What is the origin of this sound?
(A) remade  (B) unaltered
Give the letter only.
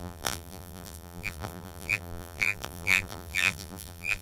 A